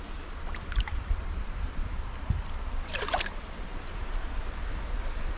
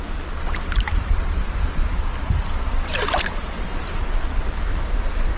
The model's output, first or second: first